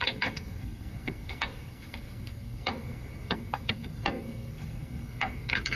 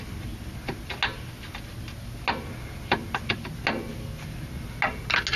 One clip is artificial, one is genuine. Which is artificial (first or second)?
first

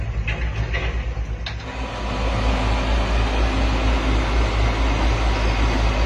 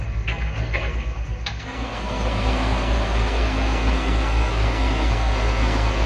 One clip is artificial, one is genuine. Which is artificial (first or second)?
second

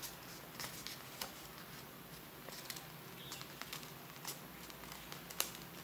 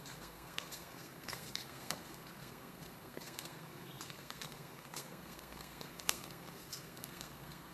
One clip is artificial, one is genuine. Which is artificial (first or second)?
second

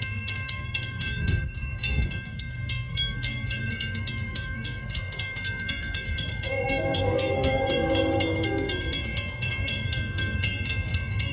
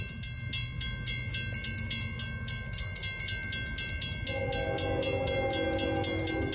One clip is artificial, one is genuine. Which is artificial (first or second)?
first